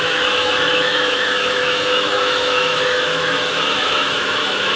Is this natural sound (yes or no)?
no